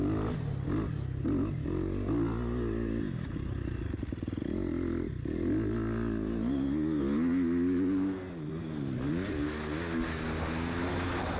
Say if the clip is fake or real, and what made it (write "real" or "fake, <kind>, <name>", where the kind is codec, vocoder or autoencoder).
real